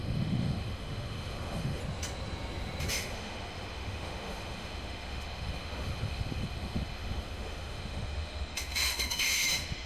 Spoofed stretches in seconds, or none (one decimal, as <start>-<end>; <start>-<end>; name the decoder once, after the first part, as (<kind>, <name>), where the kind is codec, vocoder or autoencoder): 0.0-1.8 (autoencoder, DAC-VAE); 2.9-9.9